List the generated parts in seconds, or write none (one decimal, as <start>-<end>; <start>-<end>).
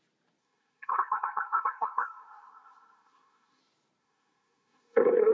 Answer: 0.4-3.6; 4.0-5.3